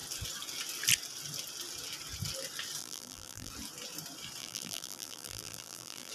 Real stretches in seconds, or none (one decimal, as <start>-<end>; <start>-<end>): 0.0-2.8; 3.5-4.4